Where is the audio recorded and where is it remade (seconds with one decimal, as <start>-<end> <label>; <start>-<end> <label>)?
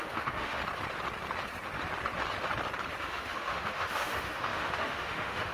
0.0-0.6 remade; 0.6-3.0 recorded; 3.0-5.5 remade